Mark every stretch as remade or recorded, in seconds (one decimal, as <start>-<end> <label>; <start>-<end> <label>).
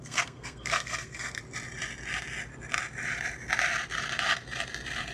0.0-1.4 remade; 1.4-5.1 recorded